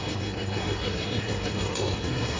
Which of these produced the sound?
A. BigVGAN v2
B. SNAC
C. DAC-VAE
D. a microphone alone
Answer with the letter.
B